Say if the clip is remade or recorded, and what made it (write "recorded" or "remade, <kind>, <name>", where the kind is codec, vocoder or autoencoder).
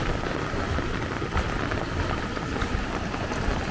recorded